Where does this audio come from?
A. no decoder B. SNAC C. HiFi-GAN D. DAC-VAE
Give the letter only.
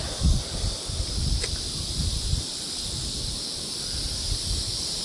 A